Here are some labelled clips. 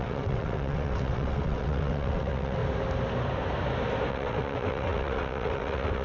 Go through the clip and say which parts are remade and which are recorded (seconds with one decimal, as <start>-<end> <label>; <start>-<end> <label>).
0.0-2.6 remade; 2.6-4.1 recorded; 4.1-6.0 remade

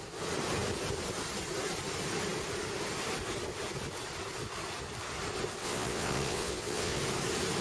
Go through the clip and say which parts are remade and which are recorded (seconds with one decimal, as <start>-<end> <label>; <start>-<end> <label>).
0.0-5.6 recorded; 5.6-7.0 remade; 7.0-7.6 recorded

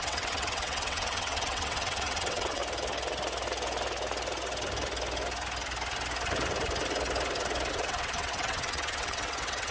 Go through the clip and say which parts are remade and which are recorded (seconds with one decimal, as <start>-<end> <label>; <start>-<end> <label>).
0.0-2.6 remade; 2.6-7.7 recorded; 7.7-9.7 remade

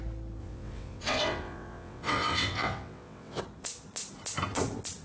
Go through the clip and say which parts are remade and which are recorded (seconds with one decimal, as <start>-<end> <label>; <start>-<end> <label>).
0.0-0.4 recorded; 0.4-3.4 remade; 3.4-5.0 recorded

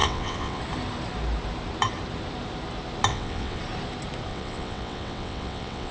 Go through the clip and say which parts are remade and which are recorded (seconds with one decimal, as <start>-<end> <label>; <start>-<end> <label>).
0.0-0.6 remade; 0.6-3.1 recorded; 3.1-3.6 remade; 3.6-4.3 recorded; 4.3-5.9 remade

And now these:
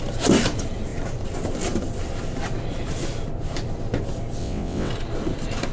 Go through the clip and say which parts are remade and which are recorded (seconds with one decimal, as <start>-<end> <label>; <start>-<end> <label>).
0.0-4.4 recorded; 4.4-4.9 remade; 4.9-5.7 recorded